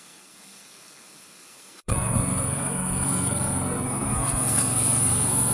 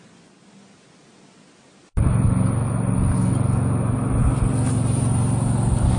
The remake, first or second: first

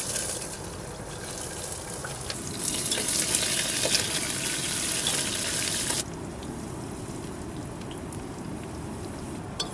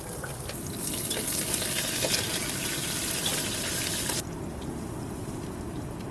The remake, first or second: second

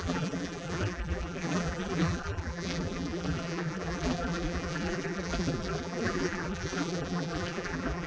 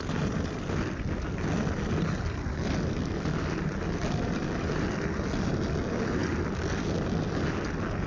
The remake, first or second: first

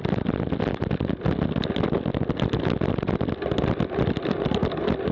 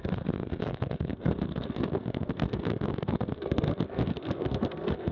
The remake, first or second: second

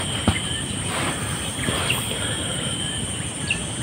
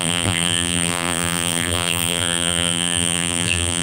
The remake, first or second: second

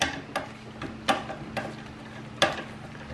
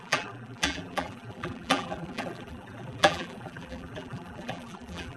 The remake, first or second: second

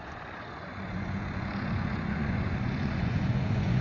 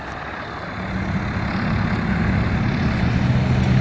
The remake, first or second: first